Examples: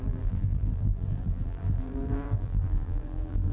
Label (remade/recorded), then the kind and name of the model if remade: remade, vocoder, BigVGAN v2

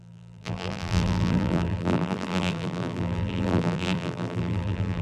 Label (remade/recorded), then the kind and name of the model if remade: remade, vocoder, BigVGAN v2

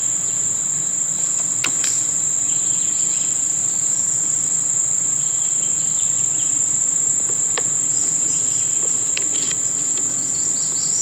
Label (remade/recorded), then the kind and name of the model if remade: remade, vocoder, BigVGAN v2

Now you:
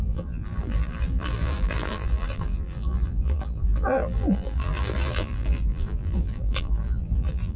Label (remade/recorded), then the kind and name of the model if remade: remade, vocoder, BigVGAN v2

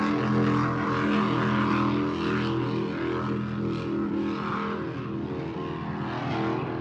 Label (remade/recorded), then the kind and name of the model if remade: recorded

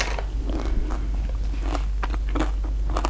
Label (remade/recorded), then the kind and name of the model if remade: recorded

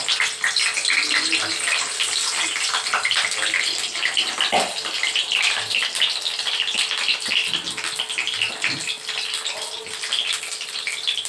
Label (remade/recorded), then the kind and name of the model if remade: recorded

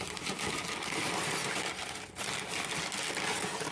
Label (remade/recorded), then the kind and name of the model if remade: recorded